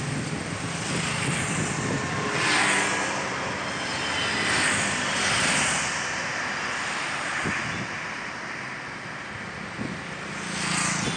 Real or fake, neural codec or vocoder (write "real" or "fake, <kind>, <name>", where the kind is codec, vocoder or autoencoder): real